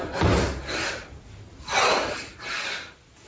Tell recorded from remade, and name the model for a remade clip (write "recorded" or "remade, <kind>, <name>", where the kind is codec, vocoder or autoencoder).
recorded